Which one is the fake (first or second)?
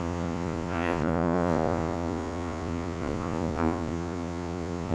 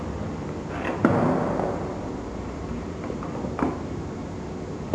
first